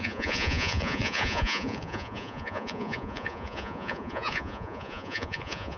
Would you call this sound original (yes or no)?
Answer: no